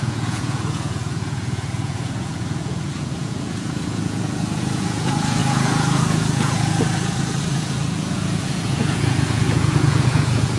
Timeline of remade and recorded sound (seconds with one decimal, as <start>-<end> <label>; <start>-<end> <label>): 0.0-10.6 remade